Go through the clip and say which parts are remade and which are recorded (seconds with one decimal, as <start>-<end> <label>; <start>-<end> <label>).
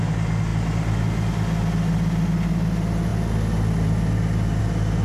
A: 0.0-5.0 recorded